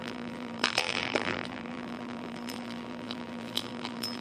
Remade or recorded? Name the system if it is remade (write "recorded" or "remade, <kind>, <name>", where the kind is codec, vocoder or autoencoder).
remade, vocoder, BigVGAN v2